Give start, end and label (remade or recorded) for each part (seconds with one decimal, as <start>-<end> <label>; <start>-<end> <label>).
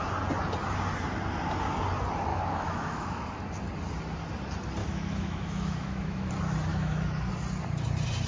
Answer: 0.0-2.3 recorded; 2.3-3.4 remade; 3.4-4.8 recorded; 4.8-6.3 remade; 6.3-6.7 recorded; 6.7-7.3 remade; 7.3-8.3 recorded